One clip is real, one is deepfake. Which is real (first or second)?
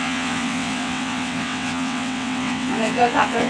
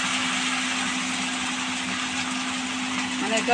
second